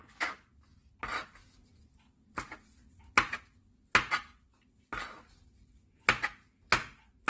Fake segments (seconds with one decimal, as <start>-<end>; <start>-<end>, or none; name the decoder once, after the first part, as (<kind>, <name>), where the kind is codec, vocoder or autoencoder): none